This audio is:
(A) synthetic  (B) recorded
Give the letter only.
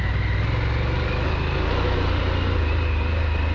B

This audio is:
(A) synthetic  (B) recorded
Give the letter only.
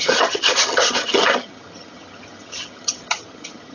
A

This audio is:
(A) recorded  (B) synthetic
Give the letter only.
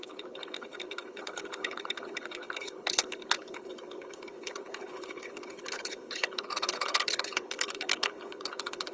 B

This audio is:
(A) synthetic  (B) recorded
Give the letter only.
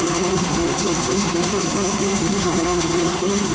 A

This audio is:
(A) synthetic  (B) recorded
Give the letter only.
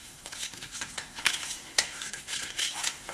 A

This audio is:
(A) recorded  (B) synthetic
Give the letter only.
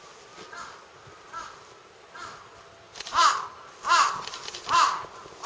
A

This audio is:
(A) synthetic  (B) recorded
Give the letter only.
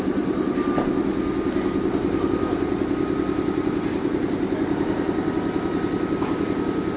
B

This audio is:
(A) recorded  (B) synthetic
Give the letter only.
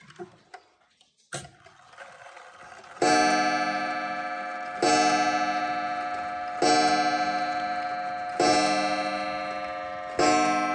A